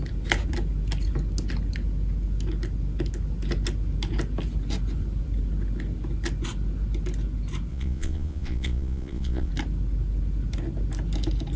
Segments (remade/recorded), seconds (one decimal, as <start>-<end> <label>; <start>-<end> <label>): 0.0-7.7 recorded; 7.7-9.5 remade; 9.5-11.6 recorded